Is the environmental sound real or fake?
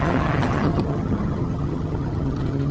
fake